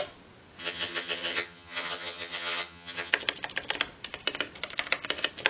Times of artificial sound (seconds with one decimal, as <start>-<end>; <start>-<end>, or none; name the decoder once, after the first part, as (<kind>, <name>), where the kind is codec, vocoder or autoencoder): 0.6-3.1 (vocoder, HiFi-GAN)